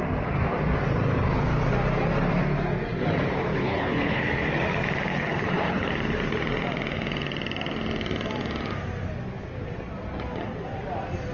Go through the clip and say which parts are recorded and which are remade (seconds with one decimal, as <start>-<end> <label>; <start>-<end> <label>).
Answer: 0.0-3.4 recorded; 3.4-4.3 remade; 4.3-5.1 recorded; 5.1-5.9 remade; 5.9-11.3 recorded

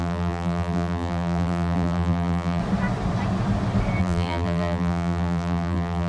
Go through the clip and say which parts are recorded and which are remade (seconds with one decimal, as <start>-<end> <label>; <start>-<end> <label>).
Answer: 0.0-2.6 remade; 2.6-4.0 recorded; 4.0-6.1 remade

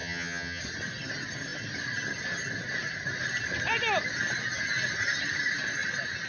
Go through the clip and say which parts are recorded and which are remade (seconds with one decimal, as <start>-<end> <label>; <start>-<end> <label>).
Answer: 0.0-0.6 remade; 0.6-6.3 recorded

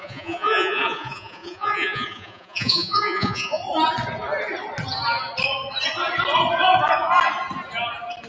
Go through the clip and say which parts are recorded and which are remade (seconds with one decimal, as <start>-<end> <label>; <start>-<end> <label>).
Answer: 0.0-3.6 remade; 3.6-8.3 recorded

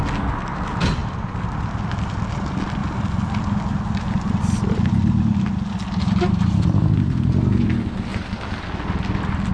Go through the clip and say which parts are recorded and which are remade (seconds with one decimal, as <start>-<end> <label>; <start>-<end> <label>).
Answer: 0.0-9.5 recorded

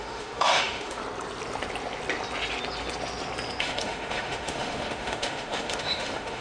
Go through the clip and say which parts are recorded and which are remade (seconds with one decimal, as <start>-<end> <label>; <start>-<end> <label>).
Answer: 0.0-1.0 remade; 1.0-3.6 recorded; 3.6-6.4 remade

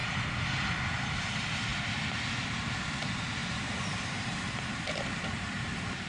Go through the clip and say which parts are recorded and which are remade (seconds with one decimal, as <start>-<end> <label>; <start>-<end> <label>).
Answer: 0.0-1.2 recorded; 1.2-1.7 remade; 1.7-2.9 recorded; 2.9-3.4 remade; 3.4-3.9 recorded; 3.9-6.1 remade

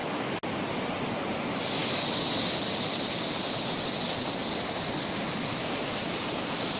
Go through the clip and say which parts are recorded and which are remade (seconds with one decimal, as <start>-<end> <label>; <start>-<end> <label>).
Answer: 0.0-6.8 recorded